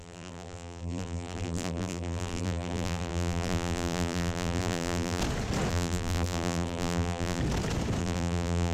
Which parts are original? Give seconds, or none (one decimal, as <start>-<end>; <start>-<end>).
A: 5.2-5.7; 7.4-8.0